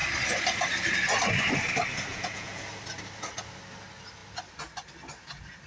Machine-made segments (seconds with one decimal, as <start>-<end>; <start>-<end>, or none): 2.1-2.6